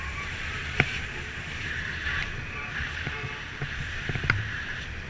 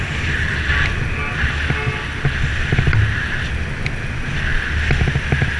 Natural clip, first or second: second